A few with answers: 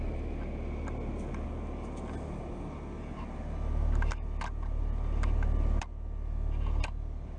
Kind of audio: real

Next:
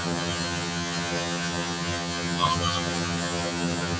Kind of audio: fake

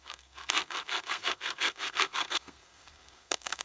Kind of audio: fake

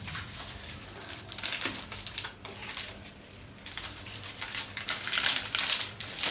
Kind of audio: fake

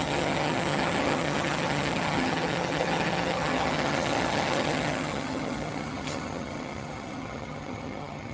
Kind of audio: fake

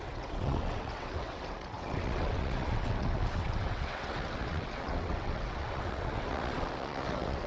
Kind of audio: fake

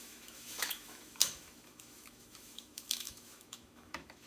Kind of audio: fake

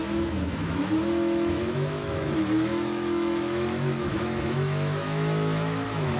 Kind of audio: fake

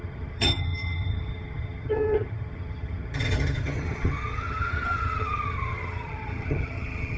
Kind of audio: fake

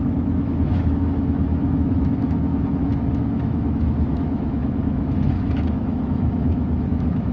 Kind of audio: fake